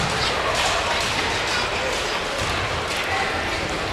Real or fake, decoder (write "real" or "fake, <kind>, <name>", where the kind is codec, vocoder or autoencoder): real